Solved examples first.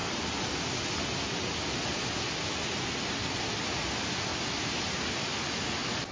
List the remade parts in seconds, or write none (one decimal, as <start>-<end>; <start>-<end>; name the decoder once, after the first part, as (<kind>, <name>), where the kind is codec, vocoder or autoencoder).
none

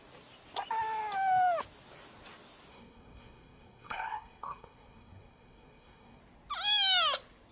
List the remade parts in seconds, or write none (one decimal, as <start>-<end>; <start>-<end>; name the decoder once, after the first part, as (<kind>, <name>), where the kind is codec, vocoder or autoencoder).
2.7-6.2 (codec, SNAC)

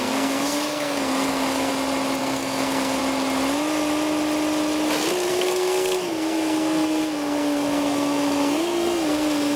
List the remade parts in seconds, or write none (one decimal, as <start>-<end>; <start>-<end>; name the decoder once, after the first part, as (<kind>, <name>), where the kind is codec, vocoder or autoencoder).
0.0-1.7 (codec, SNAC); 2.2-3.0; 5.3-9.6